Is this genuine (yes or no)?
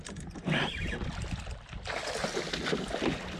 yes